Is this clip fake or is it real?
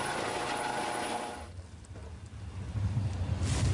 real